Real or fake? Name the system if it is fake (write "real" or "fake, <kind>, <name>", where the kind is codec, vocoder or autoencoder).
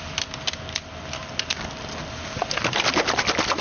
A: real